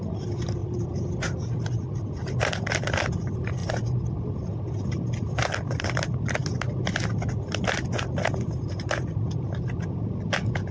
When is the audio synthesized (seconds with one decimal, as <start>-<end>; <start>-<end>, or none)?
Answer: 0.6-1.1